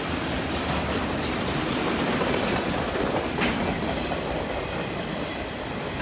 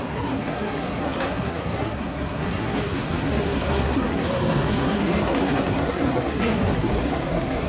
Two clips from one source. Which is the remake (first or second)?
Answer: second